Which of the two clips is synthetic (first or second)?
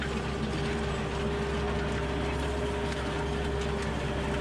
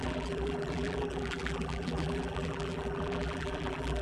second